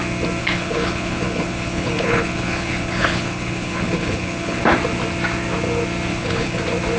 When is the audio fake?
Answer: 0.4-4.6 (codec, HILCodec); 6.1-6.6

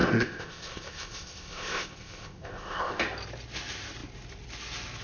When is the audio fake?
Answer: 0.0-3.0 (codec, ZipCodec)